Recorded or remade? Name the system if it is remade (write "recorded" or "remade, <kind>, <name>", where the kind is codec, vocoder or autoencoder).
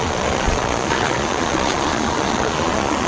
remade, vocoder, Vocos